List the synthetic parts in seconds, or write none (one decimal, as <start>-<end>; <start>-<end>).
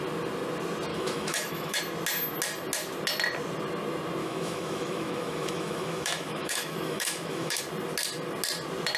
0.9-1.8; 4.2-7.6